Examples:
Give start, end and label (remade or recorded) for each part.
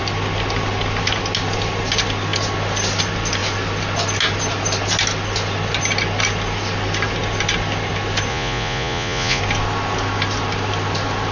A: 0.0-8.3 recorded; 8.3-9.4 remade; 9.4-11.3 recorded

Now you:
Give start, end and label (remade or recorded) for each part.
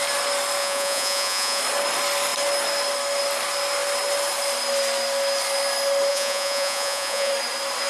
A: 0.0-0.6 recorded; 0.6-1.6 remade; 1.6-6.1 recorded; 6.1-7.3 remade; 7.3-7.9 recorded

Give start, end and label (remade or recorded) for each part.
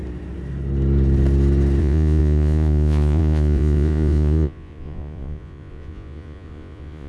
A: 0.0-1.8 recorded; 1.8-7.1 remade